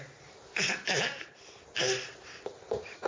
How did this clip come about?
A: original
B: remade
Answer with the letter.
A